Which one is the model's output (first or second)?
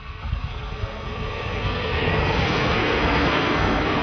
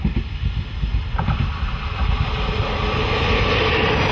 first